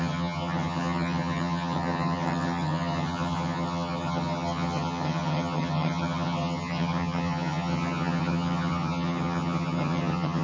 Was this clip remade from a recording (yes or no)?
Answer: yes